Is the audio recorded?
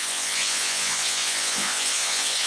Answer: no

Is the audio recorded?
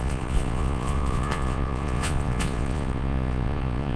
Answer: no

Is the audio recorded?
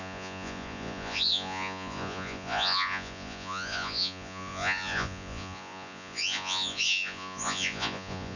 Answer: no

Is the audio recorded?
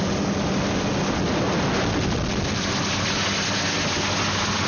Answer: yes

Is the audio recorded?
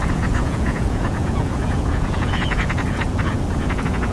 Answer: no